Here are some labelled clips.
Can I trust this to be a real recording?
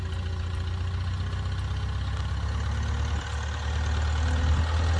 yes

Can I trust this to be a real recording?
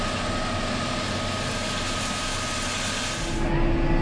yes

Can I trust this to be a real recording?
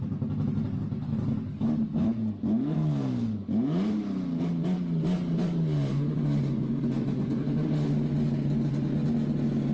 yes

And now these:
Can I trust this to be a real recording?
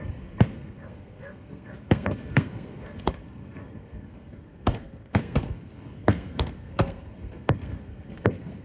no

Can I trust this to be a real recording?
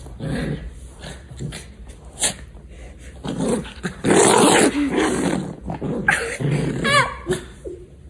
yes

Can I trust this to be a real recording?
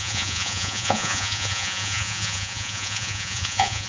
no